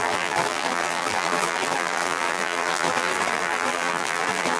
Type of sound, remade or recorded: remade